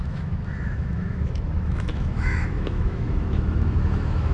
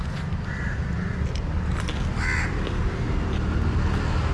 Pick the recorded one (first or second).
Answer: second